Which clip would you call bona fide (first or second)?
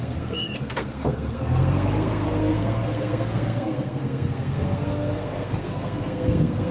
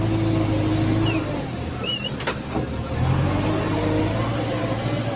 second